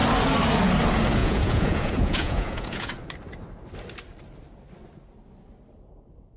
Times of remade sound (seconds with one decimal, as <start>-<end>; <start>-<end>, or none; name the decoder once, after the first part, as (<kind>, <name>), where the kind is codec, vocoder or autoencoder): 1.2-2.9 (vocoder, Vocos)